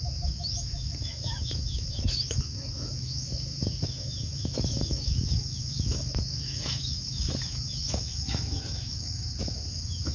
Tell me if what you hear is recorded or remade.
remade